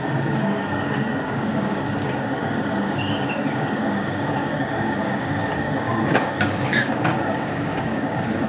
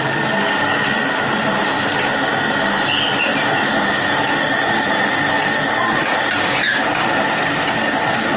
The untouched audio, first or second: second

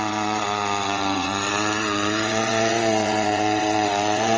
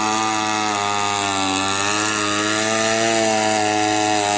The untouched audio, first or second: second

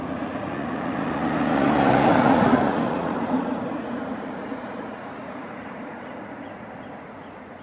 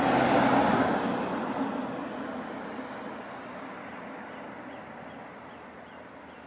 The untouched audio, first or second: second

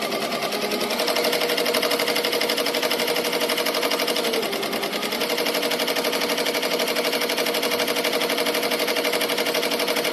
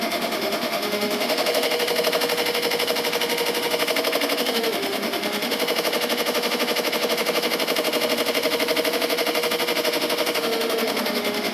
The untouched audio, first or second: first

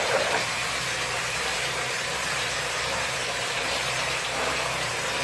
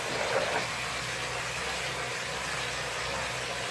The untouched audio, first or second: second